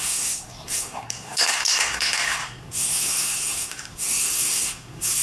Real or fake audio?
fake